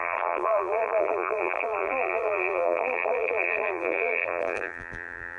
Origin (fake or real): fake